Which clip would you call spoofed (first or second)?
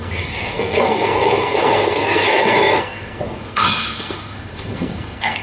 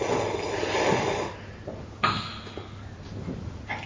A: first